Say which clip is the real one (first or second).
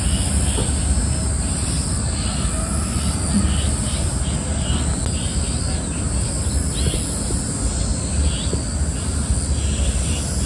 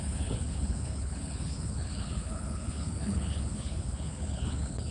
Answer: first